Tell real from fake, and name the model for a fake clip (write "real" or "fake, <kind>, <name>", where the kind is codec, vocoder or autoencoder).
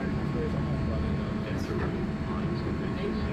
real